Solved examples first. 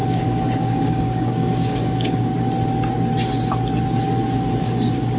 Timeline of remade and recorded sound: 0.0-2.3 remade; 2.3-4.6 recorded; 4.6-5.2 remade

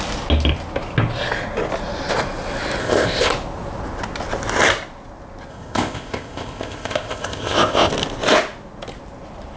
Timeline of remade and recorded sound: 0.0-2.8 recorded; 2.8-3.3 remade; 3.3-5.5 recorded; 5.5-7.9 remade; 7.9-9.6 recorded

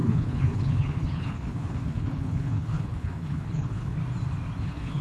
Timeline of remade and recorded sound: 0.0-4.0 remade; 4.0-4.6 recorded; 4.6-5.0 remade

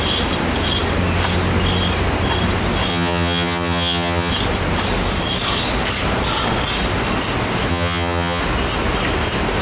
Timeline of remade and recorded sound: 0.0-2.9 recorded; 2.9-4.3 remade; 4.3-7.7 recorded; 7.7-8.4 remade; 8.4-9.6 recorded

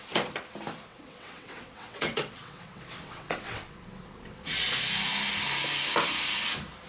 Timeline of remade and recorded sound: 0.0-0.9 recorded; 0.9-4.6 remade; 4.6-6.9 recorded

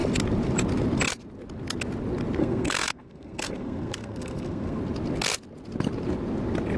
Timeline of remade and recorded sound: 0.0-2.4 recorded; 2.4-4.8 remade; 4.8-6.8 recorded

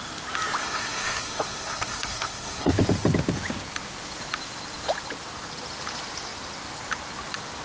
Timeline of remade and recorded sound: 0.0-0.6 recorded; 0.6-2.7 remade; 2.7-7.6 recorded

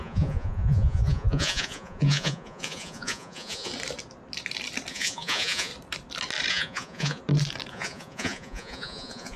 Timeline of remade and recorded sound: 0.0-3.7 remade; 3.7-4.9 recorded; 4.9-5.7 remade; 5.7-6.5 recorded; 6.5-7.2 remade; 7.2-7.7 recorded; 7.7-9.4 remade